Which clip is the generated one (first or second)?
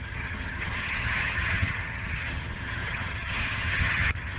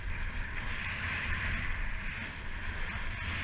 first